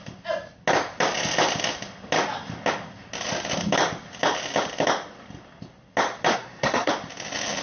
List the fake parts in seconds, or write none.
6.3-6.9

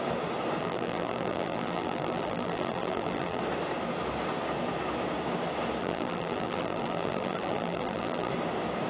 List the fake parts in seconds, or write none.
0.6-3.4; 5.8-8.3